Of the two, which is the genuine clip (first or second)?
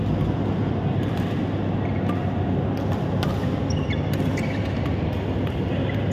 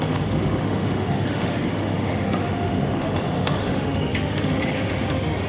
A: first